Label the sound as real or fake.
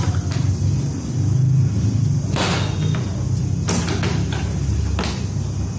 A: real